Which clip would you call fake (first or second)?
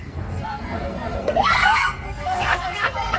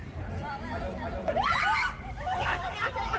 first